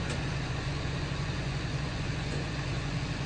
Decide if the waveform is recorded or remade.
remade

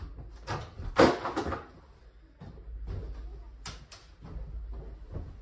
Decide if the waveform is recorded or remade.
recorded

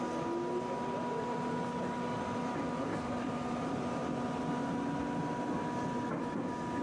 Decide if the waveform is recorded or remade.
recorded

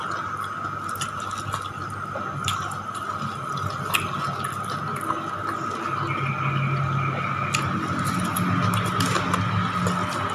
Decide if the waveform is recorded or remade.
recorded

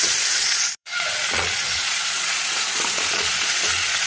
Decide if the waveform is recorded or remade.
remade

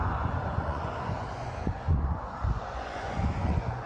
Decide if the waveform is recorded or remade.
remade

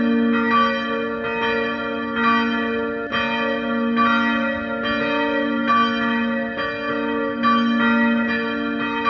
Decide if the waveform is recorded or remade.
recorded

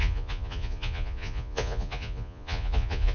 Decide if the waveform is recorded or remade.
remade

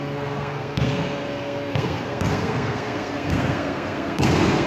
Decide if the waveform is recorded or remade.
remade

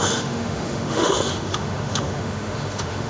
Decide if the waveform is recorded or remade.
remade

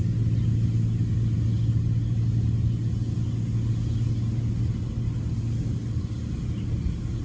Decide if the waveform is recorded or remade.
recorded